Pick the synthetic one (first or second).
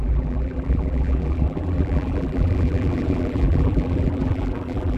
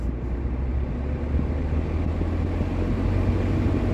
first